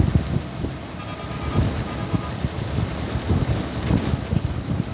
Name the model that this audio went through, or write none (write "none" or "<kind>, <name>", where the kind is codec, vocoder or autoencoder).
none